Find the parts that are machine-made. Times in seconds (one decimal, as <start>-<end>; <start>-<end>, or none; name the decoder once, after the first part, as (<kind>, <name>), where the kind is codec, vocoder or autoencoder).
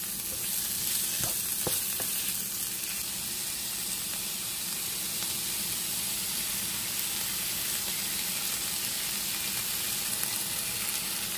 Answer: 3.4-6.5 (vocoder, BigVGAN v2)